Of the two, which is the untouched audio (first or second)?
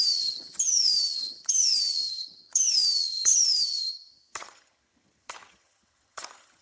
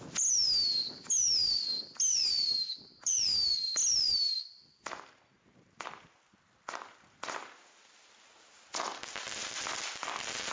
second